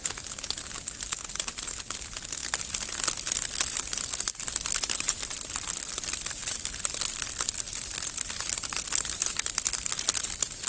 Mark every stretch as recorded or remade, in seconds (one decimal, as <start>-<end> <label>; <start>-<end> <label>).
0.0-2.4 remade; 2.4-4.6 recorded; 4.6-10.7 remade